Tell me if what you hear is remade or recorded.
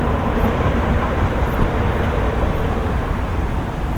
remade